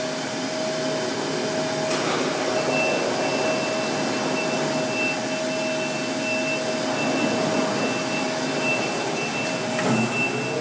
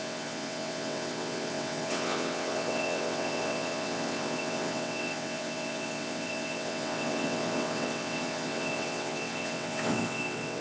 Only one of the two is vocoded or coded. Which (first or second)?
second